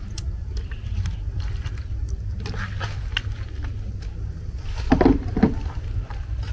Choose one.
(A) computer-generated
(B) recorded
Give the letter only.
B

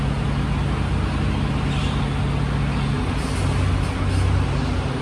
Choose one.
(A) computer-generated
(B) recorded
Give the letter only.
B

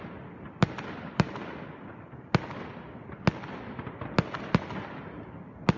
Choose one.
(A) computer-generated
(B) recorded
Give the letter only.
B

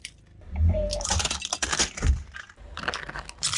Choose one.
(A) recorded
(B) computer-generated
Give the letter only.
A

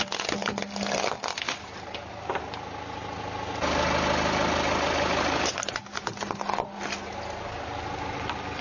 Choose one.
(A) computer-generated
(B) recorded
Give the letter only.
B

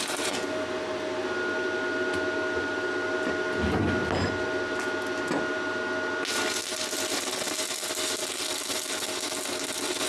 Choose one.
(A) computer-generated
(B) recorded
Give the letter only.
B